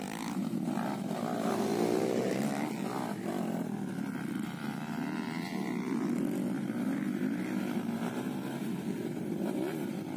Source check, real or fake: real